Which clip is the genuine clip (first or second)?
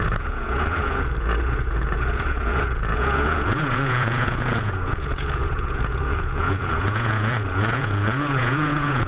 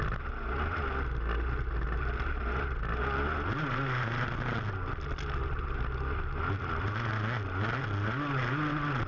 second